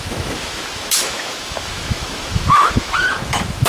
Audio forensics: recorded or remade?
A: remade